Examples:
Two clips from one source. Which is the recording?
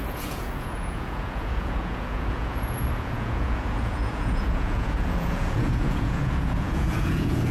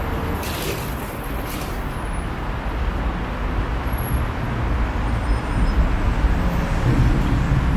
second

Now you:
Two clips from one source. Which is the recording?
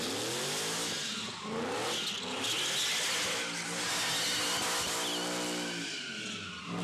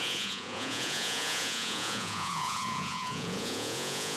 first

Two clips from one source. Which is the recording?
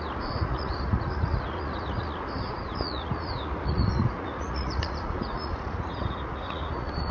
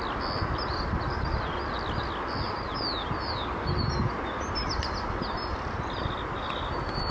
second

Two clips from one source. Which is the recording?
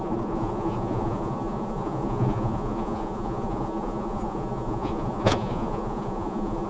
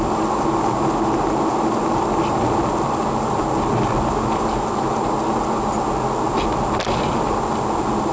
second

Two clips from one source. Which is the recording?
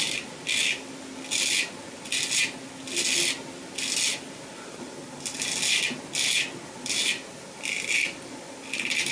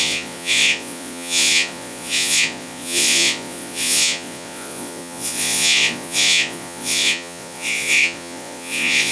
first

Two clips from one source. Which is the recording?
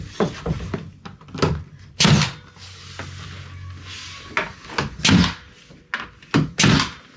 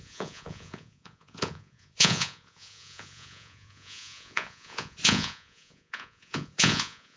first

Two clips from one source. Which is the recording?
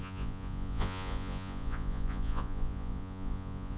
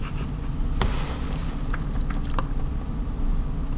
second